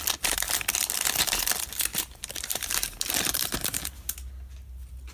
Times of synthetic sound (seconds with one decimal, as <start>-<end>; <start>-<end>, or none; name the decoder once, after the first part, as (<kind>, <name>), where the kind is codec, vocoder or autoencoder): none

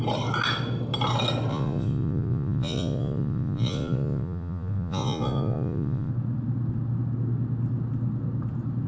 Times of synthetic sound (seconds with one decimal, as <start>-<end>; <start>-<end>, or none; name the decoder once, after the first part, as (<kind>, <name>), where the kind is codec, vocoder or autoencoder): 1.5-6.1 (vocoder, Vocos)

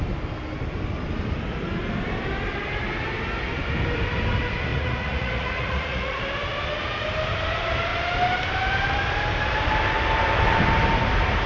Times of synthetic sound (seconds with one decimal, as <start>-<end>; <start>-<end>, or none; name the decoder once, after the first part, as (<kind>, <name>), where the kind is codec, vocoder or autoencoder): 4.7-6.2 (vocoder, Vocos)

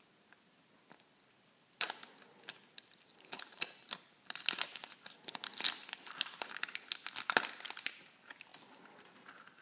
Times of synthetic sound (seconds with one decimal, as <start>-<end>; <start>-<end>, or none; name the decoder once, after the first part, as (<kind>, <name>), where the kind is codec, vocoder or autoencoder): none